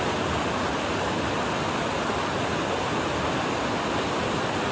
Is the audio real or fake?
real